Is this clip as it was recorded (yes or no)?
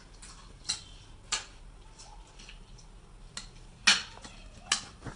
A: yes